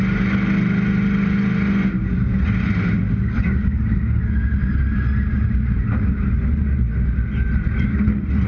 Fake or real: real